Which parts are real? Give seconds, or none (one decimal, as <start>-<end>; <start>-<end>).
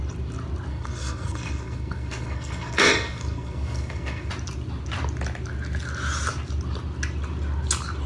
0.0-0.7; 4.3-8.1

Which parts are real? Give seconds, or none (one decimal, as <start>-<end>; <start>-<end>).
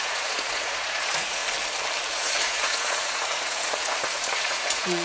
1.4-2.1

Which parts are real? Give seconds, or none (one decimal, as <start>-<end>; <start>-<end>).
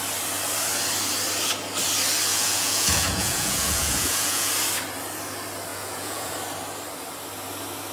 0.0-2.3; 4.5-5.7; 6.3-7.9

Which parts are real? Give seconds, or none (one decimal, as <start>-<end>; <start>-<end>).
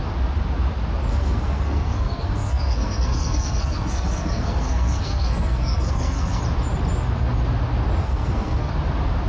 0.0-1.1; 6.4-8.0; 8.7-9.3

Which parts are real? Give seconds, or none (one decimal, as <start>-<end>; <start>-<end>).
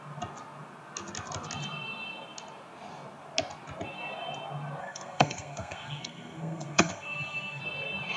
0.0-4.8; 7.6-8.2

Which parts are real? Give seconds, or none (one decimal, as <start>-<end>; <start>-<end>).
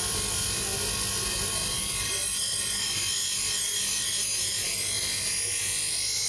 0.0-1.6; 3.0-4.5; 5.3-6.3